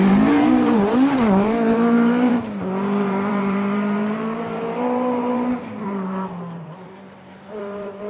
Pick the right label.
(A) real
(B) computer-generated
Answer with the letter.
B